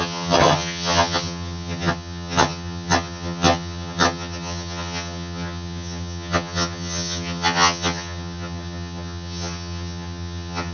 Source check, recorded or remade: remade